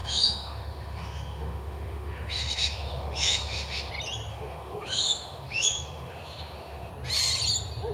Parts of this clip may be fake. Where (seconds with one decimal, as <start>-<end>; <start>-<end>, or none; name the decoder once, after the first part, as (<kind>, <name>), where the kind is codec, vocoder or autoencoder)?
0.0-3.9 (autoencoder, DAC-VAE); 4.3-6.9

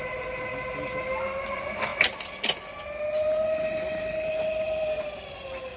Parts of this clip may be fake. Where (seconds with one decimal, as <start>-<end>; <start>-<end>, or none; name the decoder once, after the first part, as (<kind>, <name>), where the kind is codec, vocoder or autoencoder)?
none

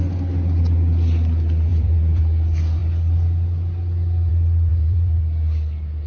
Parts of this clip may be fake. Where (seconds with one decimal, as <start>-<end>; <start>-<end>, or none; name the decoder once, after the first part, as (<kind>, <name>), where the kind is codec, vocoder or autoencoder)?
1.7-2.2 (vocoder, Vocos); 4.7-5.2

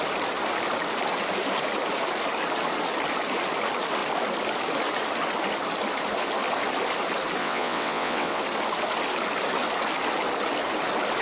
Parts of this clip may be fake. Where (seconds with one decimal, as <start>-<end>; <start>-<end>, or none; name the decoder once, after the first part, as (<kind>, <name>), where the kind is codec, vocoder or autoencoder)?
7.4-8.4 (vocoder, WaveNeXt)